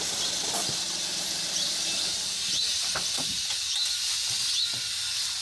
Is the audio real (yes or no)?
no